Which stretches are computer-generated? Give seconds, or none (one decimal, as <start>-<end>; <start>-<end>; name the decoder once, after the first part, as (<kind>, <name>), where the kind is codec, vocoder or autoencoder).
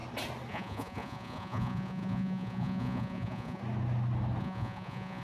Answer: 0.5-3.6 (vocoder, Vocos); 4.4-5.2